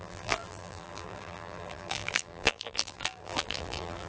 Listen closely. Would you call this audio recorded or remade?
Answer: remade